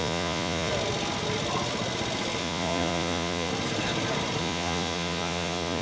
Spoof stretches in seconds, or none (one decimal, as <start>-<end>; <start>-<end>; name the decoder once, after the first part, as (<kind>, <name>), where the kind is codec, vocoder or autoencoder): 0.0-0.7 (vocoder, Vocos); 2.4-3.5; 4.4-5.8